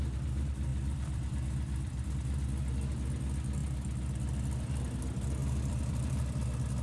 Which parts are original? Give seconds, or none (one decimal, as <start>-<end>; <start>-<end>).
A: 0.0-0.7; 2.1-5.4; 6.2-6.8